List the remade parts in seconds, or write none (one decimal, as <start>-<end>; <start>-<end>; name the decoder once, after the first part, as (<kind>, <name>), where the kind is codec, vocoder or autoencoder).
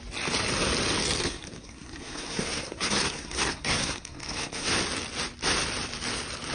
1.2-4.7 (codec, SNAC)